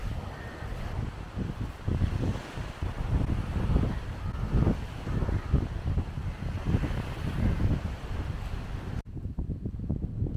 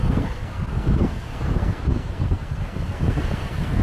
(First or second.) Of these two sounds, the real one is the first